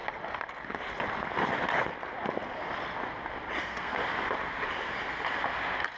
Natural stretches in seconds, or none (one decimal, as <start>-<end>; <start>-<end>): 0.0-3.6; 4.0-6.0